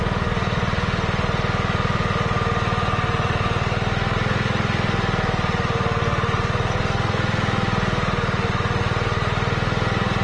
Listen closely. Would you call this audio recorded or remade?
recorded